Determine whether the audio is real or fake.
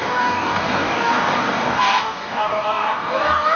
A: fake